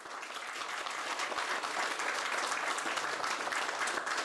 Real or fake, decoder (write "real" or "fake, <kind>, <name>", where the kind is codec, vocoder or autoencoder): real